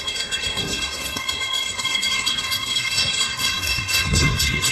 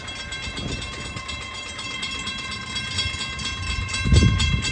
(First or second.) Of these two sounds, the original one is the second